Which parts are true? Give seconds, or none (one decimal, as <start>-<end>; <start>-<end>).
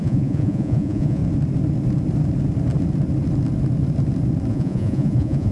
1.2-4.5